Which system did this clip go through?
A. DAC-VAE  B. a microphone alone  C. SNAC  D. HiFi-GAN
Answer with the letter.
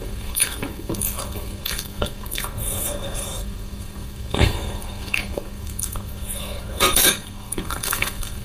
C